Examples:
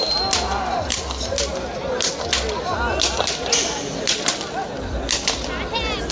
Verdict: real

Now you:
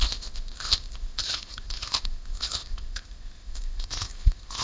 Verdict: fake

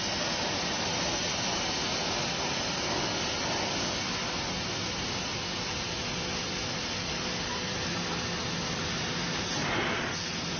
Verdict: real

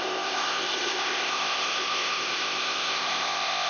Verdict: fake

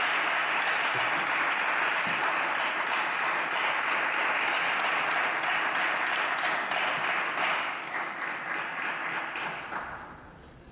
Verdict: real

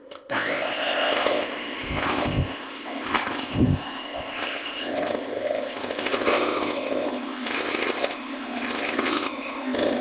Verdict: fake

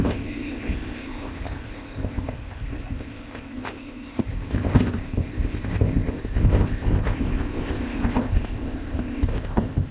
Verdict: fake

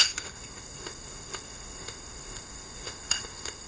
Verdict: fake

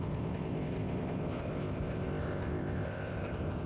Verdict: fake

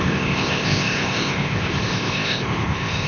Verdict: fake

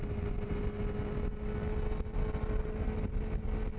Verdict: real